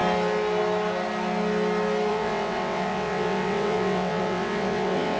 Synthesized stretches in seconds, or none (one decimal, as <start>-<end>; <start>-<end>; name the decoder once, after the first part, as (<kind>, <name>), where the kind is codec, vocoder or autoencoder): 2.1-5.2 (vocoder, WaveNeXt)